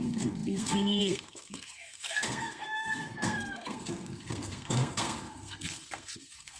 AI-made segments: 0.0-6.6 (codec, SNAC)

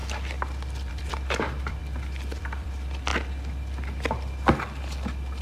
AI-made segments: 0.9-1.8 (vocoder, BigVGAN v2); 2.4-3.1

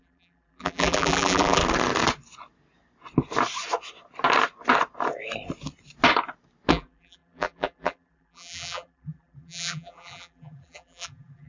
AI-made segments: 0.0-1.6 (vocoder, BigVGAN v2); 6.7-11.5

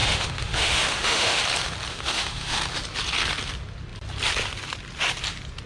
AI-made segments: 0.0-1.4 (autoencoder, DAC-VAE); 1.9-2.6

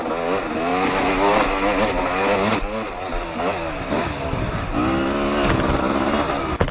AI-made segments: 4.0-4.7 (autoencoder, DAC-VAE)

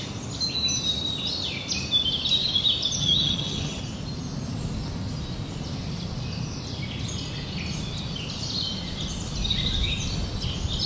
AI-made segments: 3.0-3.8 (vocoder, HiFi-GAN)

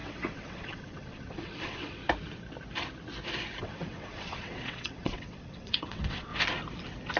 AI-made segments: 0.0-2.0 (vocoder, WaveNeXt); 3.6-6.3